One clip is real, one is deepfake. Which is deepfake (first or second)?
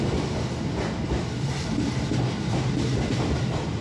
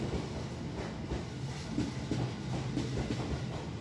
first